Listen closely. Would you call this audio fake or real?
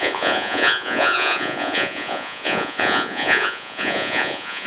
fake